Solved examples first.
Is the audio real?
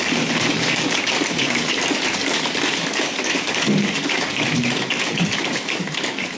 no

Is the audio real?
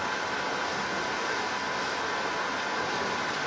yes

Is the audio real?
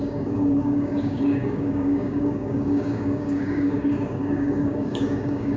no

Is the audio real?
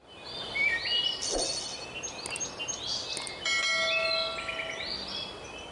yes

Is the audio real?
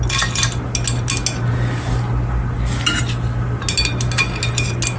yes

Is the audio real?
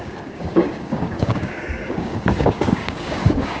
no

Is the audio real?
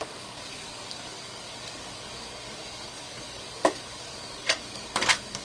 no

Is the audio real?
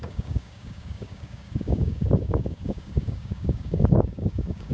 no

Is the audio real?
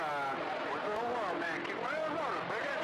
yes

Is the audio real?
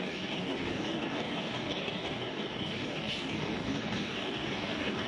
no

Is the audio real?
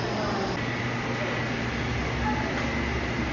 yes